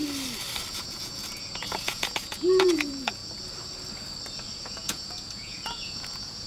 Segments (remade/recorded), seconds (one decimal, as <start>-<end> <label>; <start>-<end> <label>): 0.0-0.7 recorded; 0.7-3.2 remade; 3.2-4.6 recorded; 4.6-6.5 remade